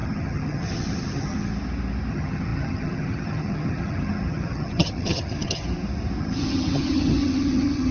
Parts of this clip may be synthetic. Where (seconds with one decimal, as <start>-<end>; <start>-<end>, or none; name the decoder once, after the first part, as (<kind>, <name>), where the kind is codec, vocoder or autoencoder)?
0.0-1.5 (vocoder, HiFi-GAN); 2.1-5.6; 6.2-7.9